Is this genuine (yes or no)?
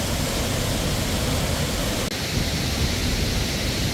yes